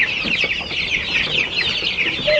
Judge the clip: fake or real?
real